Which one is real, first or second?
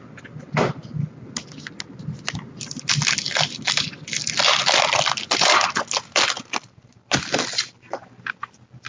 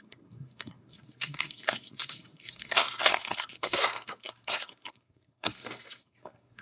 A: first